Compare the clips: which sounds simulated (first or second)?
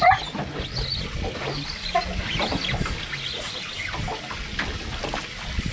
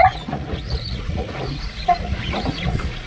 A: second